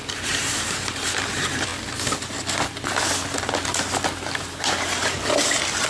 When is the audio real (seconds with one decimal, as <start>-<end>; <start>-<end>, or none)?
1.7-4.4; 5.0-5.9